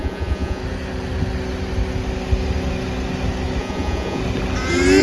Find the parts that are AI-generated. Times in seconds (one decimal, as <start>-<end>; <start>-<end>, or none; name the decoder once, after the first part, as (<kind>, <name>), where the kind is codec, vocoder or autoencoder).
0.0-0.6 (vocoder, Vocos); 3.6-4.2